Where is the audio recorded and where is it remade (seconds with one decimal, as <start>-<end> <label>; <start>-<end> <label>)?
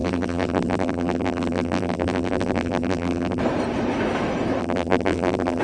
0.0-3.4 remade; 3.4-4.6 recorded; 4.6-5.6 remade